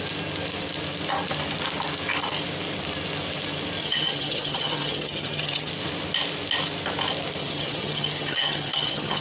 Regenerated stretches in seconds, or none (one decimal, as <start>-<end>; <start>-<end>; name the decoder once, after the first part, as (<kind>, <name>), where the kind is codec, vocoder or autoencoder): 3.8-5.7 (vocoder, HiFi-GAN); 7.4-9.2